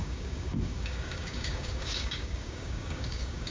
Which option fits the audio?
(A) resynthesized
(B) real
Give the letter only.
A